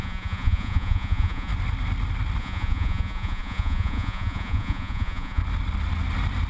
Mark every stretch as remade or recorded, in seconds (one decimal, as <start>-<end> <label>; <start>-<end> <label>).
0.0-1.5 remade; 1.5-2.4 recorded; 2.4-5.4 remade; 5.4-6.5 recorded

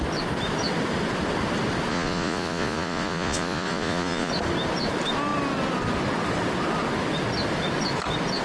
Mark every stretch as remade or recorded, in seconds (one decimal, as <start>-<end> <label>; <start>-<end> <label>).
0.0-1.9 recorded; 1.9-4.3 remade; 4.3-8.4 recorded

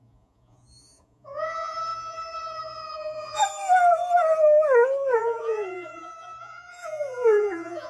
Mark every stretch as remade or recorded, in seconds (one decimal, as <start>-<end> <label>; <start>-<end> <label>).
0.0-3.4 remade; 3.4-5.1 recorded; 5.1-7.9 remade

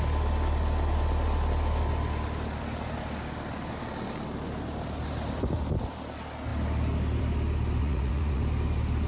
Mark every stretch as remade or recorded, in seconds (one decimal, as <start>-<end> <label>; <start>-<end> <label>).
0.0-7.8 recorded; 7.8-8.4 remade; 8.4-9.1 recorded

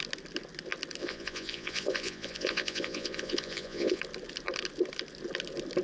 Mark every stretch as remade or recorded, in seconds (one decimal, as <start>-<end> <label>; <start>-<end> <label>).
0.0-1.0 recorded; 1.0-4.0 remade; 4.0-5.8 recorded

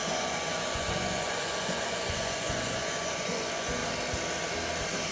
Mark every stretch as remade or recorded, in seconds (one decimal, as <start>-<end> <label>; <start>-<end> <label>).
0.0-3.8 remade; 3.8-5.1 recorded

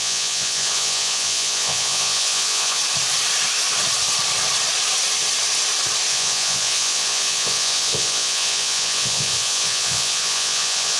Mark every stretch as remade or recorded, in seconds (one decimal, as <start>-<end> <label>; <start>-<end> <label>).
0.0-2.8 remade; 2.8-6.1 recorded; 6.1-11.0 remade